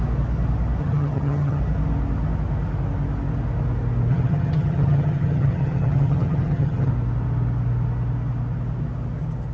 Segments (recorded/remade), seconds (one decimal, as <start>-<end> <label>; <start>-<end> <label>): 0.0-0.8 recorded; 0.8-1.6 remade; 1.6-4.1 recorded; 4.1-6.9 remade; 6.9-9.5 recorded